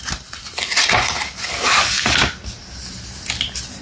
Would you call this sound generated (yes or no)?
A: no